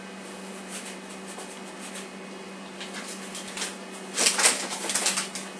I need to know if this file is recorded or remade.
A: recorded